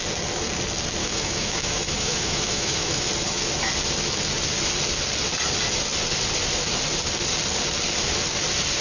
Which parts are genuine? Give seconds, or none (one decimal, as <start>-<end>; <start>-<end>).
0.0-1.0; 3.1-8.8